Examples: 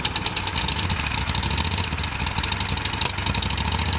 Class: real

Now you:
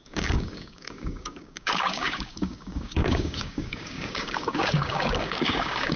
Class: fake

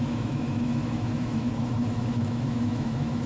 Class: fake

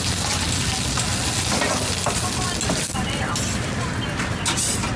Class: real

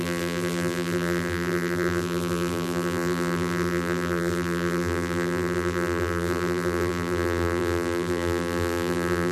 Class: fake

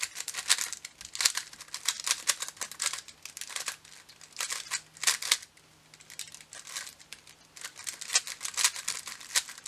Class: real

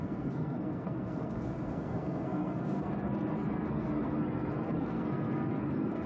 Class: fake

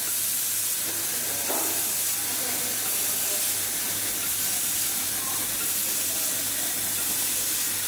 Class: real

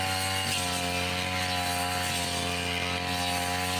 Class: real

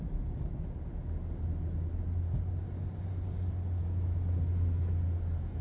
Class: real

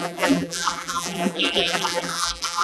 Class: fake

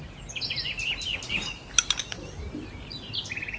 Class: real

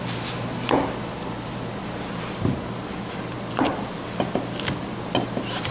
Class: real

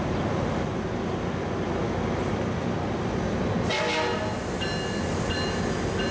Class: real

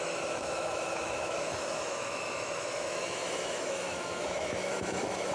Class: fake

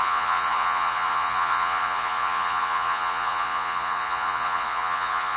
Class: fake